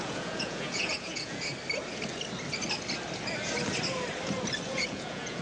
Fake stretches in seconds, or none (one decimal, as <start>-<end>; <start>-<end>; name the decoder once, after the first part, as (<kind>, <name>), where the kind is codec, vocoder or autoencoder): 0.0-1.5 (vocoder, Vocos); 4.7-5.4